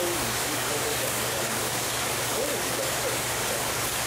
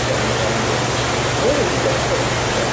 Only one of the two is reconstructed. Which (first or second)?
first